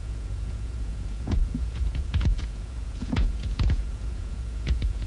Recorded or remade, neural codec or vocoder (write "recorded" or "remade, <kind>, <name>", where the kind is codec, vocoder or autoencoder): remade, vocoder, Vocos